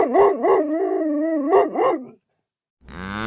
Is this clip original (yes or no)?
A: yes